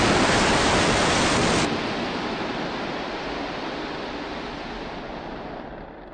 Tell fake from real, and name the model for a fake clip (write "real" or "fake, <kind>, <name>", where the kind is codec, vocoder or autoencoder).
real